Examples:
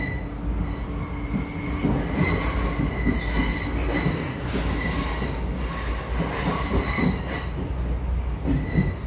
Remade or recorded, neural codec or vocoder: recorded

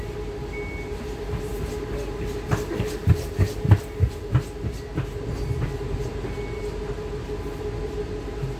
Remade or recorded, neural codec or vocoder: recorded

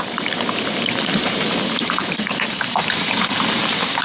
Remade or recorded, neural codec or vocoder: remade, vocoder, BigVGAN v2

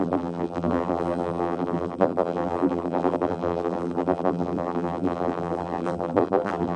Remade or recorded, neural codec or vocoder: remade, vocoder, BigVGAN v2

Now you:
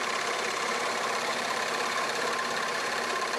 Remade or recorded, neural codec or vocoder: remade, vocoder, BigVGAN v2